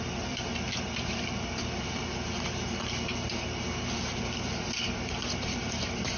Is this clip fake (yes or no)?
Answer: yes